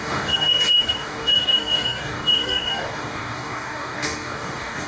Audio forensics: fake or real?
fake